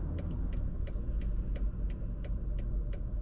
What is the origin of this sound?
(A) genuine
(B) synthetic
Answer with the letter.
A